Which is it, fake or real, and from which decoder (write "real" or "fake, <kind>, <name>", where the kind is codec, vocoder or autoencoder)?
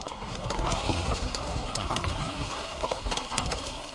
fake, codec, SNAC